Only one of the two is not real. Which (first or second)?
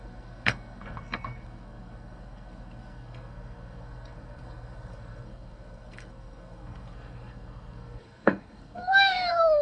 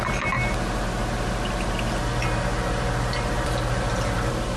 first